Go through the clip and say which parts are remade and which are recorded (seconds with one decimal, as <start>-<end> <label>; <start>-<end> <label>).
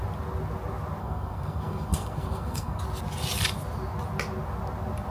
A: 0.0-1.0 recorded; 1.0-2.8 remade; 2.8-5.1 recorded